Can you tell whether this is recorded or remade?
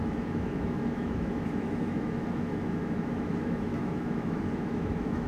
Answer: remade